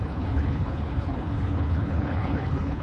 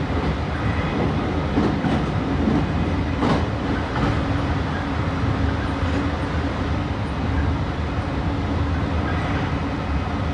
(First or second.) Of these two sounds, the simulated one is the first